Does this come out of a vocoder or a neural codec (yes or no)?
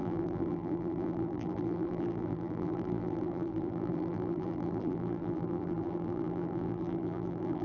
yes